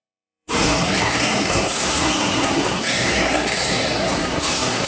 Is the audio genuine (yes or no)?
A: no